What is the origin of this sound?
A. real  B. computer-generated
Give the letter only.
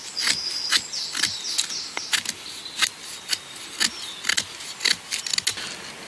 A